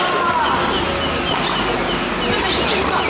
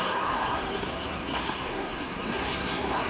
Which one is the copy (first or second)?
second